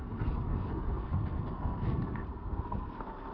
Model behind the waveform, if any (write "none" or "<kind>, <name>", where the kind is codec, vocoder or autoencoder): codec, SNAC